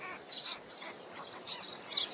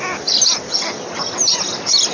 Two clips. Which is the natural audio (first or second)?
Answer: second